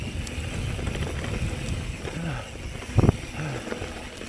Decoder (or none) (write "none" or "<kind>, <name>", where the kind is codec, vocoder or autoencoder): none